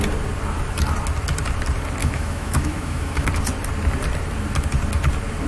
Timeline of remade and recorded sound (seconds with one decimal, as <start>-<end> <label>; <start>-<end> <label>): 0.0-2.0 recorded; 2.0-3.3 remade; 3.3-5.5 recorded